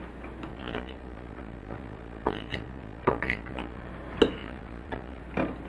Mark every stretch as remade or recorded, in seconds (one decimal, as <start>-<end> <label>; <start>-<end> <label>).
0.0-0.5 recorded; 0.5-3.9 remade; 3.9-4.4 recorded; 4.4-5.2 remade; 5.2-5.7 recorded